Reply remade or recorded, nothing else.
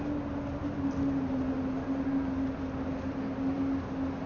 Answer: recorded